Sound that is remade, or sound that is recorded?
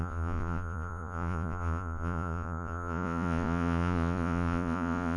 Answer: remade